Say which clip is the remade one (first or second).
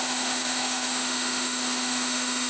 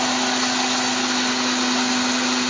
first